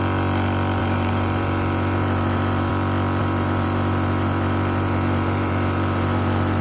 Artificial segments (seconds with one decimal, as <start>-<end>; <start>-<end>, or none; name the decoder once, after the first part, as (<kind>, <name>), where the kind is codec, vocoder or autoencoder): 0.8-2.7 (vocoder, BigVGAN v2); 3.2-6.6